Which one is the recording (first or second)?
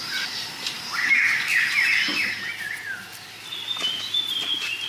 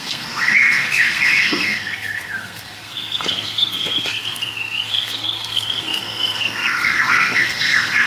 first